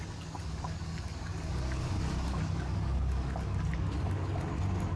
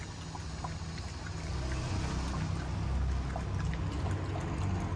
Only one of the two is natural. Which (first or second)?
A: second